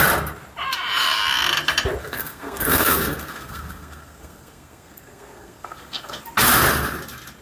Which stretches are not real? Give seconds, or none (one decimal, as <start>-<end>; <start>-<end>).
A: 2.0-6.2